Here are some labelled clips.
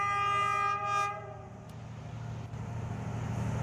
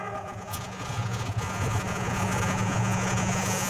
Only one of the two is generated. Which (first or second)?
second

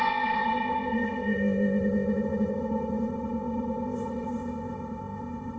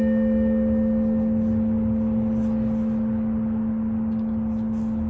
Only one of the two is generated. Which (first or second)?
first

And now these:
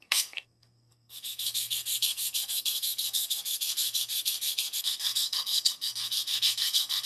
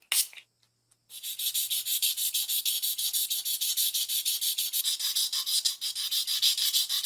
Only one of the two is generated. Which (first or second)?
first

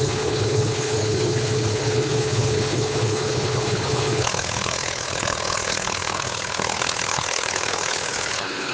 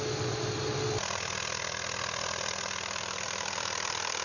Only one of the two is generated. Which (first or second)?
first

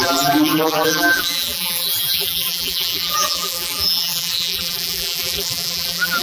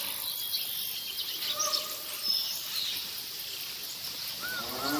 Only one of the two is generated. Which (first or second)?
first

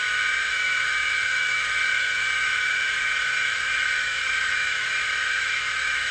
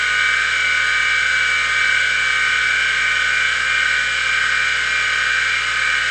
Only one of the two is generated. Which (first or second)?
first